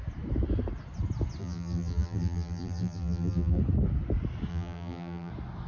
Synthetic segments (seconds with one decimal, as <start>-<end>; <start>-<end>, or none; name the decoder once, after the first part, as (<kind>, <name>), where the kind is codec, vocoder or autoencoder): 1.4-3.6 (vocoder, BigVGAN v2); 4.5-5.3